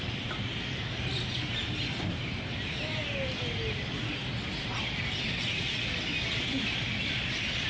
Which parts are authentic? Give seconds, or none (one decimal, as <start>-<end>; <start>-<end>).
0.0-0.5; 3.0-7.7